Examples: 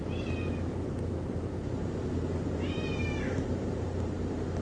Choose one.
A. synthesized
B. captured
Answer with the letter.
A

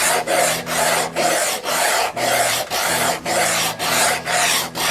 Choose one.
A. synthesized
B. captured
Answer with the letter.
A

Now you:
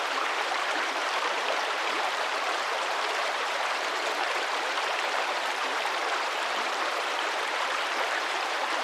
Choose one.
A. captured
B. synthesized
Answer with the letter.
B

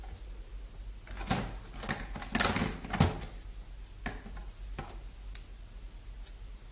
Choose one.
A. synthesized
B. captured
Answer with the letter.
B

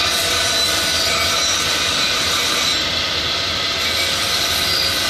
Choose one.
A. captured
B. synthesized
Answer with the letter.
B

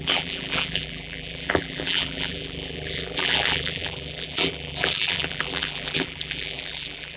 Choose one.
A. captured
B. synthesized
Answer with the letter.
B